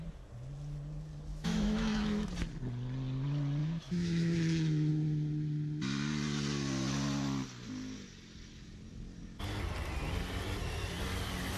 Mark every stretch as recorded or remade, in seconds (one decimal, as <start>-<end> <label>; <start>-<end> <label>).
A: 0.0-1.3 recorded; 1.3-2.3 remade; 2.3-3.6 recorded; 3.6-4.9 remade; 4.9-11.6 recorded

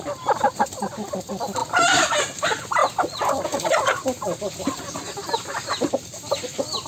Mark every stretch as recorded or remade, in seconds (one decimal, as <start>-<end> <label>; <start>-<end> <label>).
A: 0.0-6.9 recorded

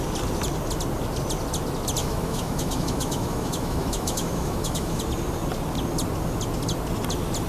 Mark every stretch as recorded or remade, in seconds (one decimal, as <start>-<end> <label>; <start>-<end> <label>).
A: 0.0-2.0 recorded; 2.0-5.0 remade; 5.0-7.5 recorded

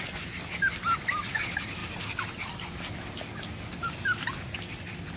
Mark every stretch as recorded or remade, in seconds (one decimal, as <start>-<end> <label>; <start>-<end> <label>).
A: 0.0-5.2 recorded

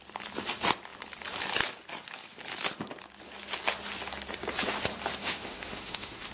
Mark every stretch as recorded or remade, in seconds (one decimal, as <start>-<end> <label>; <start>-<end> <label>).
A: 0.0-5.2 recorded; 5.2-6.3 remade

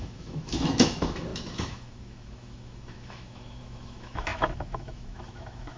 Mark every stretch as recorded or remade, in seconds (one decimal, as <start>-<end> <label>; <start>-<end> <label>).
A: 0.0-5.8 remade

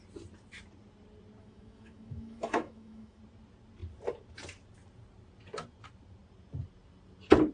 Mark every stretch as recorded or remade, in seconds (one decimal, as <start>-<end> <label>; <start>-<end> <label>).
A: 0.0-1.4 recorded; 1.4-3.2 remade; 3.2-7.5 recorded

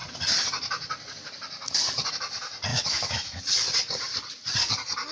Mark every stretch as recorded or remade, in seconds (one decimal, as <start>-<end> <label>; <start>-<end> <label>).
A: 0.0-2.7 recorded; 2.7-3.4 remade; 3.4-5.1 recorded